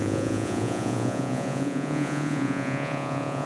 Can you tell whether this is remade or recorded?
remade